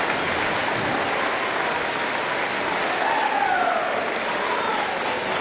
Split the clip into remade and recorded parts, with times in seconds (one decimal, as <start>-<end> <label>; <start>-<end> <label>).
0.0-5.4 recorded